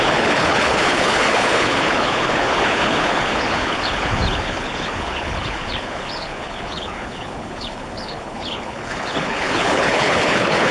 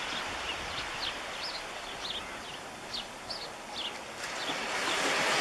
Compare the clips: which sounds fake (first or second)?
first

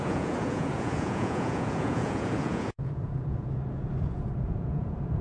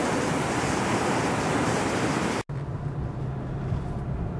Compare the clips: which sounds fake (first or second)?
first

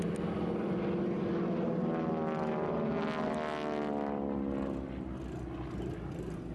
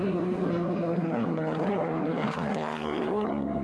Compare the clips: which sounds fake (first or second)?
second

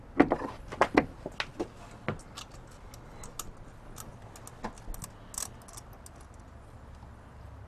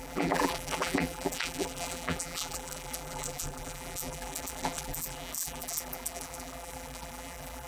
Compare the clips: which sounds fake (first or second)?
second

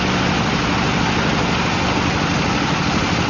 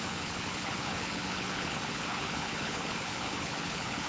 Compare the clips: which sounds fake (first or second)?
second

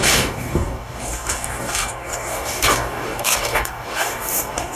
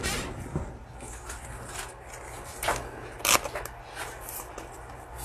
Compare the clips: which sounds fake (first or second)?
first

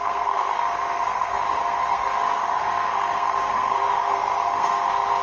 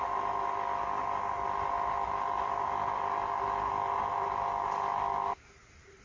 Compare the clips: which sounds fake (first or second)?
first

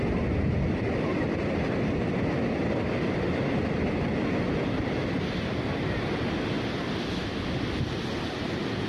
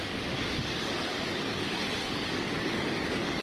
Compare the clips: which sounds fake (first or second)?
second